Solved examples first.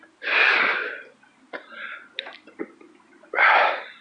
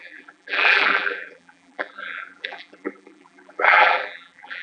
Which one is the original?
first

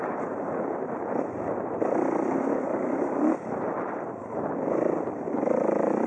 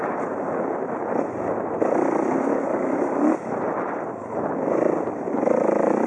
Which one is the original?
second